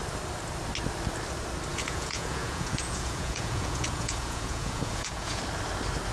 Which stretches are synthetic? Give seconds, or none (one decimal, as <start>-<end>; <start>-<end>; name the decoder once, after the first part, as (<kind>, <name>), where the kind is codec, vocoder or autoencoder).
1.7-5.4 (vocoder, Vocos)